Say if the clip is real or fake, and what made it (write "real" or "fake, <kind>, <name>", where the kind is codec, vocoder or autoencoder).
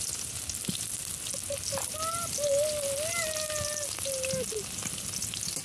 real